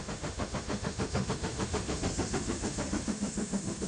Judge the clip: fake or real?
fake